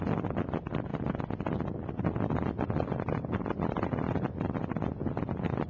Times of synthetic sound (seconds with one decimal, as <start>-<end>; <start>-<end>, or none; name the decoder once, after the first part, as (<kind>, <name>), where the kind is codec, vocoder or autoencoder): none

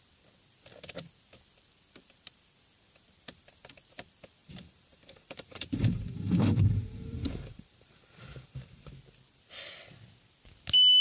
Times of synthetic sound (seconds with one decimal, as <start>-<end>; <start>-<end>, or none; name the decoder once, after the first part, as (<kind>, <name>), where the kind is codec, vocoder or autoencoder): 4.4-8.9 (vocoder, BigVGAN v2)

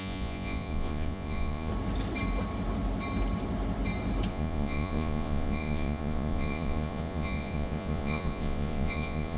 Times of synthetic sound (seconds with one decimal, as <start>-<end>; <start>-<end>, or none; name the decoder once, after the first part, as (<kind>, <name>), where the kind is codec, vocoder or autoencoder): 0.0-1.7 (vocoder, Vocos); 4.3-9.4

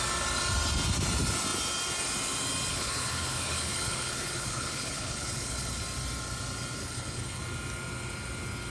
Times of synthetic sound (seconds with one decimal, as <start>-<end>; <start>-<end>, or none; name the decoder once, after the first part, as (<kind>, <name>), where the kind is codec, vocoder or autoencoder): 2.7-5.8 (codec, HILCodec); 6.8-7.4

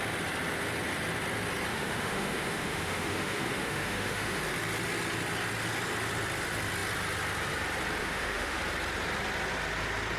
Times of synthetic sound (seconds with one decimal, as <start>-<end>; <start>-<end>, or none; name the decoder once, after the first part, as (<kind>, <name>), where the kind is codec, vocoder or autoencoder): 1.7-4.4 (autoencoder, DAC-VAE); 8.0-8.6

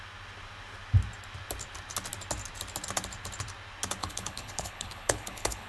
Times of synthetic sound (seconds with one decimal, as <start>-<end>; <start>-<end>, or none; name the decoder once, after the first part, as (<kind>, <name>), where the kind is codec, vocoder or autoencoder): 4.0-5.7 (codec, HILCodec)